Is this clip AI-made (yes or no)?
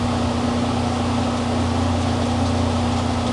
no